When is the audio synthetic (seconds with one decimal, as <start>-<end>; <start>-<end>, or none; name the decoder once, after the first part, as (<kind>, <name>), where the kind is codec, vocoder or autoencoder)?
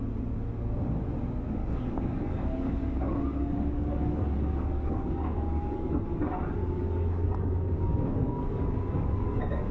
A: 1.6-5.9 (codec, DAC); 6.6-9.7